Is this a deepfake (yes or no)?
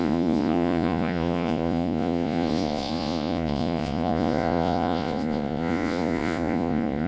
yes